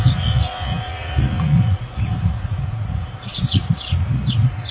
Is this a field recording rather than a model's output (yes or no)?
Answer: no